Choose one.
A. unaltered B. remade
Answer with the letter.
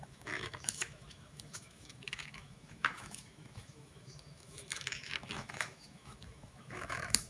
B